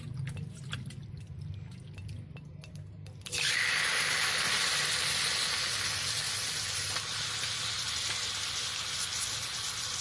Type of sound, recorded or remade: recorded